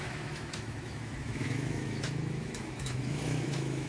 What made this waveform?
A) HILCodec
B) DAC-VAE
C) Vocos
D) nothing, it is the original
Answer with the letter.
B